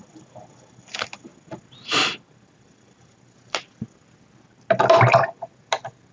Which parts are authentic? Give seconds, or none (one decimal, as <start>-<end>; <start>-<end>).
0.0-6.1